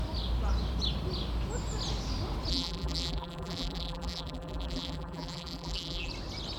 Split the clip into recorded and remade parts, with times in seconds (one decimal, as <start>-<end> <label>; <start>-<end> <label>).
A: 0.0-2.5 recorded; 2.5-6.1 remade; 6.1-6.6 recorded

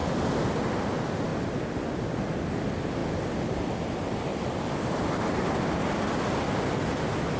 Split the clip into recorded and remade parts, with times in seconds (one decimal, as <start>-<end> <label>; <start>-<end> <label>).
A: 0.0-4.3 recorded; 4.3-6.1 remade; 6.1-7.4 recorded

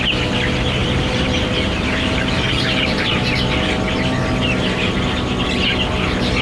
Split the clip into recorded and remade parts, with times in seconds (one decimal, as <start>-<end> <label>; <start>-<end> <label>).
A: 0.0-0.8 recorded; 0.8-3.1 remade; 3.1-6.4 recorded

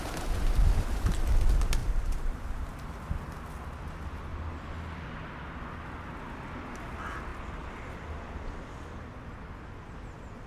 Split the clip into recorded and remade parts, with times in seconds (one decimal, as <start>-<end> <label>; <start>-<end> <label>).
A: 0.0-1.8 recorded; 1.8-2.8 remade; 2.8-10.5 recorded